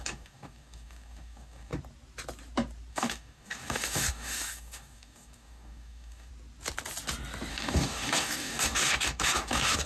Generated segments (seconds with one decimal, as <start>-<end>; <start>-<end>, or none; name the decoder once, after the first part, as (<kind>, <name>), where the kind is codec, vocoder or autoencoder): 0.0-1.7 (codec, DAC); 2.9-6.3; 7.5-9.9